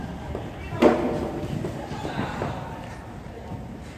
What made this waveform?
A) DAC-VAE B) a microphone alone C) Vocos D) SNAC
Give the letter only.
B